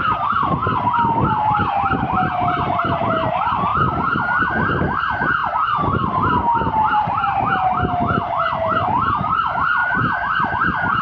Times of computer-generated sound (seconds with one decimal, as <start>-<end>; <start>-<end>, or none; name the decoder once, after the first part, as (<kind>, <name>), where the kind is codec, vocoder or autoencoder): 0.0-0.6 (vocoder, BigVGAN v2); 1.3-3.7; 4.4-11.0